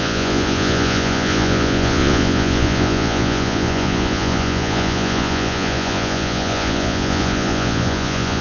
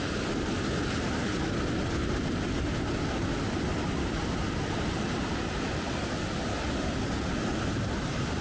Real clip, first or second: second